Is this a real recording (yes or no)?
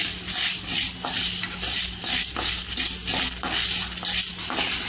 yes